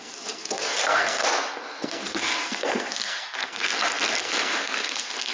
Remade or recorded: remade